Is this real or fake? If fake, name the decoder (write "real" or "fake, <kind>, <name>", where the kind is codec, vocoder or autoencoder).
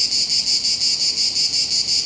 real